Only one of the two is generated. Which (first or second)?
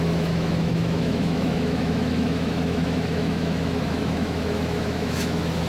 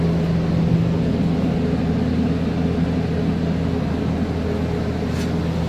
first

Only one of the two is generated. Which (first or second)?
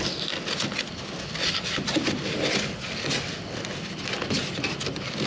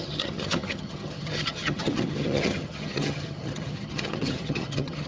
second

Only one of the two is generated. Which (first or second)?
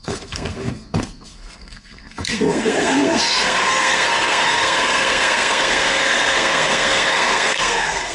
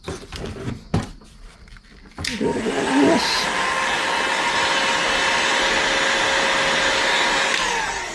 first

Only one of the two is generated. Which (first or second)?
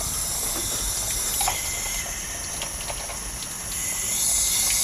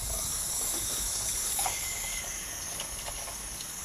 second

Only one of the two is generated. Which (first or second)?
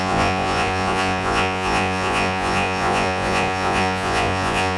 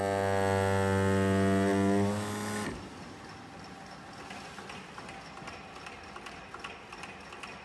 first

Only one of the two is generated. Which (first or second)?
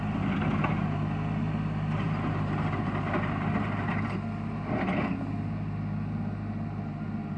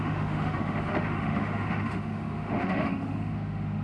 second